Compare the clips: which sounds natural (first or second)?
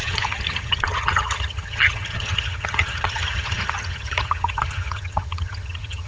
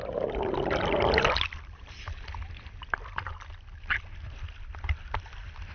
second